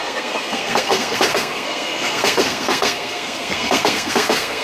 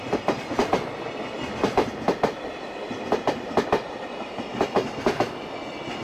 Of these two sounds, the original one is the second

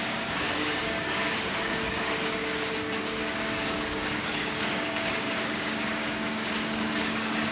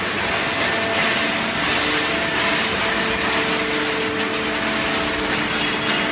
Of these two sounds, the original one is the second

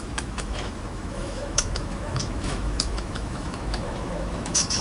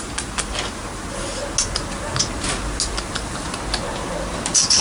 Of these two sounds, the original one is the second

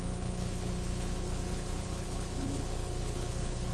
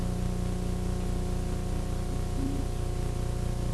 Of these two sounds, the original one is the second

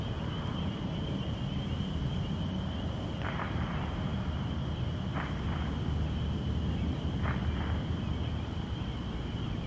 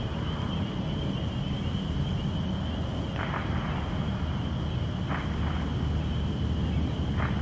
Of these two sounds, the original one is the second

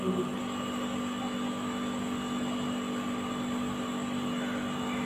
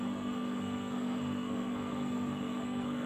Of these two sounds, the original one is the first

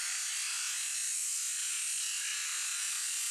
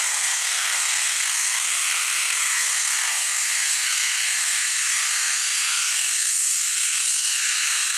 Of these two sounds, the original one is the first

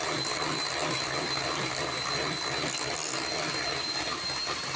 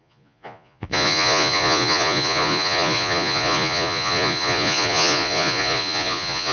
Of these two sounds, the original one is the first